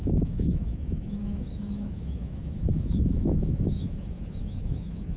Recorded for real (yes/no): no